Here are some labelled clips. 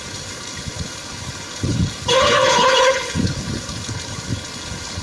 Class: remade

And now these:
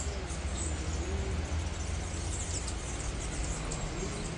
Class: recorded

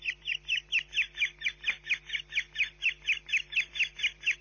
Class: recorded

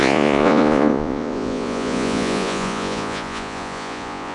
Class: remade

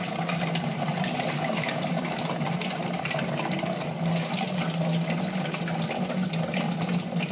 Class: recorded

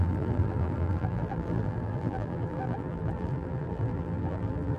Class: remade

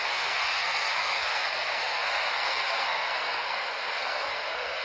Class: remade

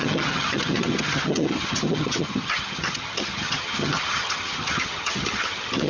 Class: remade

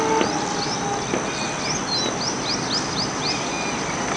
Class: recorded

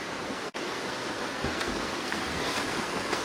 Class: remade